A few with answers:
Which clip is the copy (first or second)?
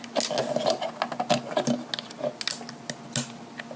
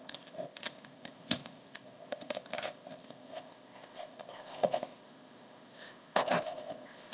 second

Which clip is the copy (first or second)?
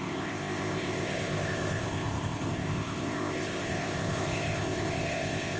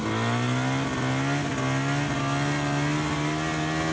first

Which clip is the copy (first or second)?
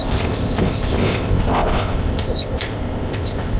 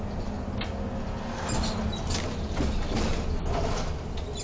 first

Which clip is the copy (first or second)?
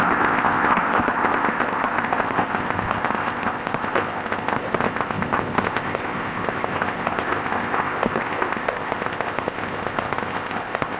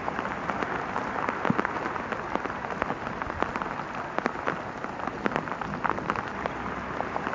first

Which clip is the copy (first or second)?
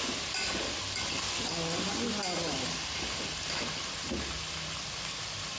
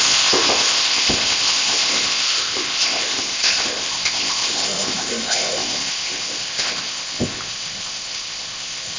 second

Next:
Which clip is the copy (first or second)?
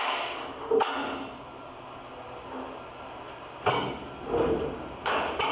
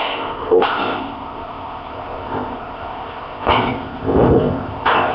second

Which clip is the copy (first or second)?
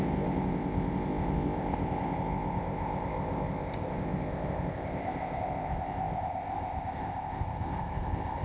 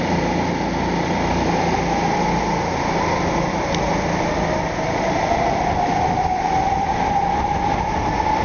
first